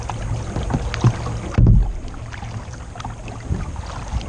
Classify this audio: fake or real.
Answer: real